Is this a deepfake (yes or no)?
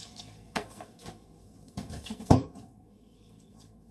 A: yes